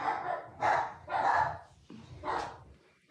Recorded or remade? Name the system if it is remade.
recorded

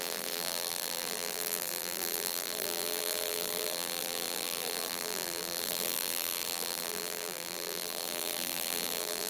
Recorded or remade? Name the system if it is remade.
remade, vocoder, BigVGAN v2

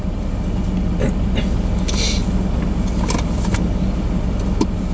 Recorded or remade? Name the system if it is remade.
recorded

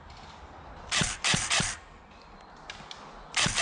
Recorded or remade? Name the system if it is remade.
recorded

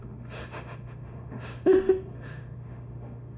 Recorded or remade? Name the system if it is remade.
remade, autoencoder, DAC-VAE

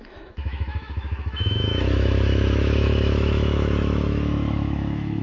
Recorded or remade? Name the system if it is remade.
remade, autoencoder, DAC-VAE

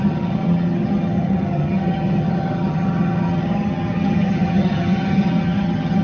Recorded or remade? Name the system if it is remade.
remade, vocoder, HiFi-GAN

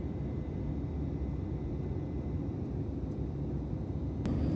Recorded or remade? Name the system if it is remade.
recorded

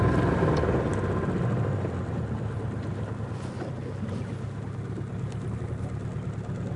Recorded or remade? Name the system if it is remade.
recorded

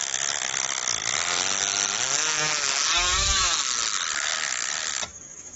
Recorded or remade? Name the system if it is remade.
remade, codec, DAC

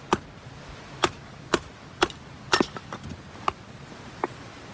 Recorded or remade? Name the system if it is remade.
recorded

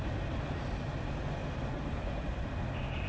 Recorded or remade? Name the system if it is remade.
recorded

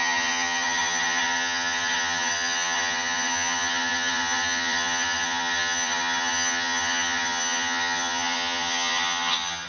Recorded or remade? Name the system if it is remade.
remade, vocoder, HiFi-GAN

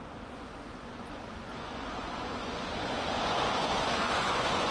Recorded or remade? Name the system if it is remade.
remade, vocoder, Vocos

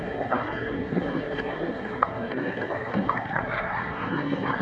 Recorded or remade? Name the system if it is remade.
remade, codec, SNAC